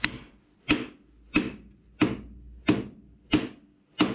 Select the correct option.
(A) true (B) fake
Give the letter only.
A